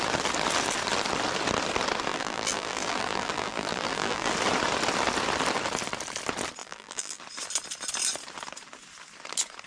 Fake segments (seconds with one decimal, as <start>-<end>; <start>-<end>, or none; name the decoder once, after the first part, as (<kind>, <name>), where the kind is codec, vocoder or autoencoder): 2.1-4.3 (vocoder, BigVGAN v2); 6.6-7.2